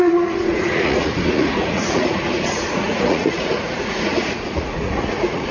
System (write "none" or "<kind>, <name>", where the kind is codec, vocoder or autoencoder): vocoder, Vocos